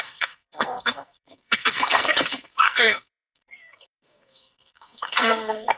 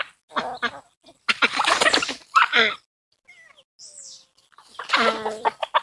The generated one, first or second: first